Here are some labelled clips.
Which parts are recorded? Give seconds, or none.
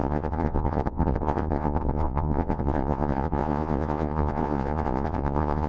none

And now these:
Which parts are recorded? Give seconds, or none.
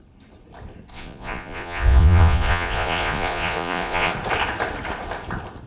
0.0-0.9; 4.1-5.7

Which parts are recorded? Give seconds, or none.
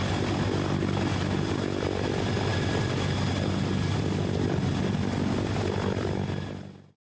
0.0-7.1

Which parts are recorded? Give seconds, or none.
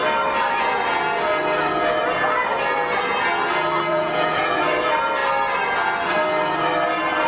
0.0-3.9; 4.6-7.3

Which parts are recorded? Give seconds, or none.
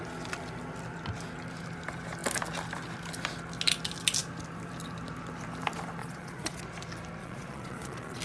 0.0-6.0; 6.6-7.2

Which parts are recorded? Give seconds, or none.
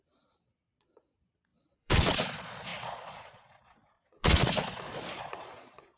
none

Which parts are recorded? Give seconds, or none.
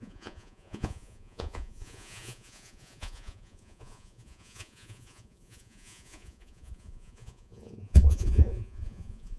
none